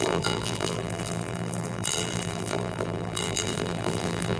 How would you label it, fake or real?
fake